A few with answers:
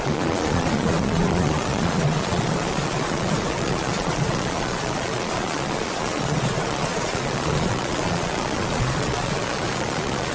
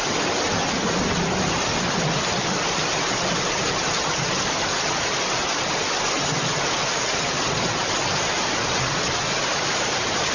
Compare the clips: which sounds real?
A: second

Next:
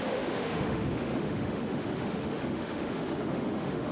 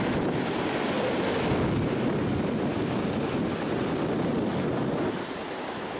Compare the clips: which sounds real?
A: second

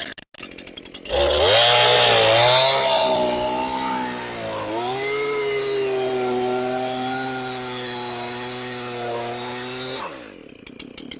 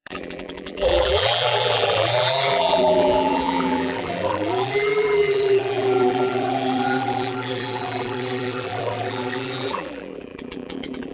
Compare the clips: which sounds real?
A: first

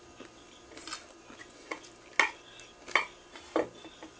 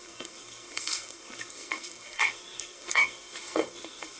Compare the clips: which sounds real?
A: first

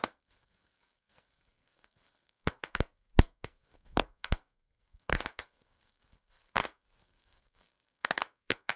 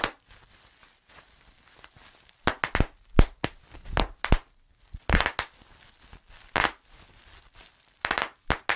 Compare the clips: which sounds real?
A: second